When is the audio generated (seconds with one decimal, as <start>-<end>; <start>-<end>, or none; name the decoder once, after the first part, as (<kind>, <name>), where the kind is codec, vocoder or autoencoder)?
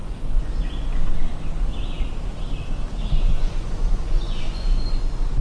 0.0-0.9 (vocoder, Vocos); 3.0-5.0